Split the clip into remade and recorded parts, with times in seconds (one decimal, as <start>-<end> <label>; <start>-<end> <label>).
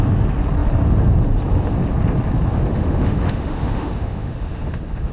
0.0-2.7 recorded; 2.7-5.1 remade